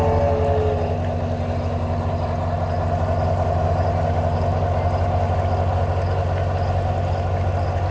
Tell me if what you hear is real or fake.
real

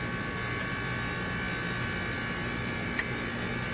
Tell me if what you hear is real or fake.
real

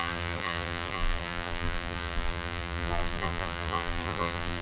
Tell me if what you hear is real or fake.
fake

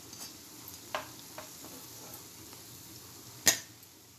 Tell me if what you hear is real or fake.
real